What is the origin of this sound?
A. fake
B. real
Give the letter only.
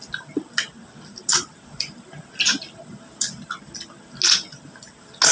B